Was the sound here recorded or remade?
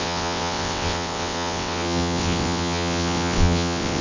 remade